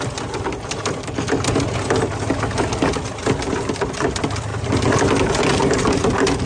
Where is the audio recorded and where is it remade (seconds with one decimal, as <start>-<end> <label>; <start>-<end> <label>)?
0.0-6.5 recorded